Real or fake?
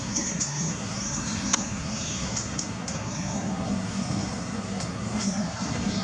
fake